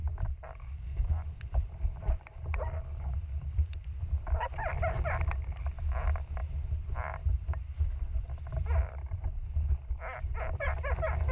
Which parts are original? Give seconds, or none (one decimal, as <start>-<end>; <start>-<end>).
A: 5.1-6.4; 10.4-11.3